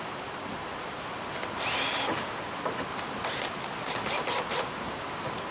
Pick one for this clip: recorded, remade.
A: recorded